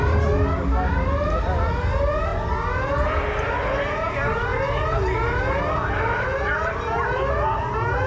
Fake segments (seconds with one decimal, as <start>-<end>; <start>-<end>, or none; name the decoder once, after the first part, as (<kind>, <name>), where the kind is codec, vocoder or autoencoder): none

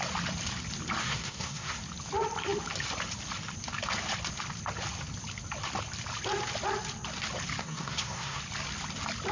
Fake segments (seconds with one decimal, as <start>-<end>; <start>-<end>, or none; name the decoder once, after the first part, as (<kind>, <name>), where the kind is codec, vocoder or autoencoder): 1.0-1.8 (codec, SNAC); 7.6-8.4